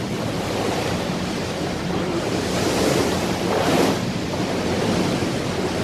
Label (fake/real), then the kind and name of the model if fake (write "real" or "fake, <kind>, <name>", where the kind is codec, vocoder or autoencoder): fake, vocoder, BigVGAN v2